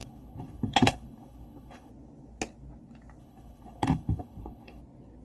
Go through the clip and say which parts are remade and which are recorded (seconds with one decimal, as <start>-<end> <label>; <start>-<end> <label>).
0.0-1.9 remade; 1.9-3.2 recorded; 3.2-4.8 remade; 4.8-5.2 recorded